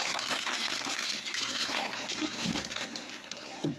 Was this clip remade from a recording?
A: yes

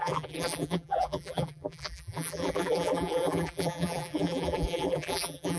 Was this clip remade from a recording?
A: yes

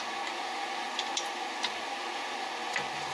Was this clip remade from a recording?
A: no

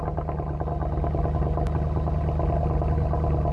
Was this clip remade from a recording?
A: no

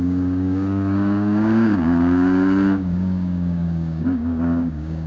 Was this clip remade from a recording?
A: yes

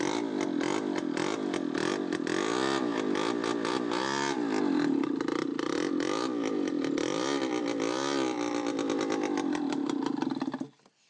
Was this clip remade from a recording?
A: no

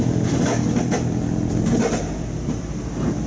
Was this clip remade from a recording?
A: no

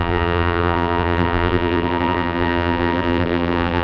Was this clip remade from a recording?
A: yes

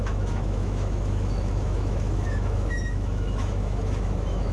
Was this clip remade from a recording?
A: yes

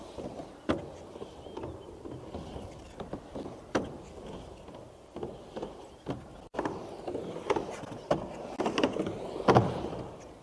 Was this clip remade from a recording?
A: no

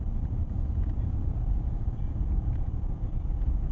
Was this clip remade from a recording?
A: yes